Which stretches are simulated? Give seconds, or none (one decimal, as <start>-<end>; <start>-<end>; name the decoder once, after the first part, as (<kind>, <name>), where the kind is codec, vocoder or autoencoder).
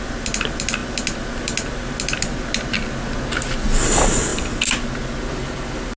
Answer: none